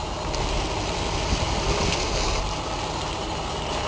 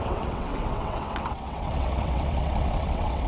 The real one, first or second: first